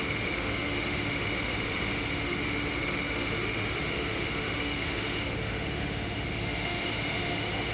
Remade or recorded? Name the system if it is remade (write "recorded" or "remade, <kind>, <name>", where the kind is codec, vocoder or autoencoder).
remade, autoencoder, DAC-VAE